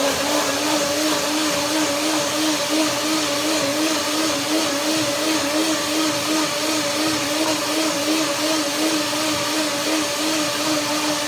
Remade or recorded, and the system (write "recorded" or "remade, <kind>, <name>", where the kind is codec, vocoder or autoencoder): recorded